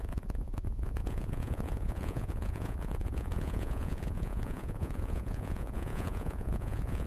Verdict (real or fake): fake